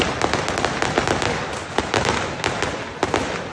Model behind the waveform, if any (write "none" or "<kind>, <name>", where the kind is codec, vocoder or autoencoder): none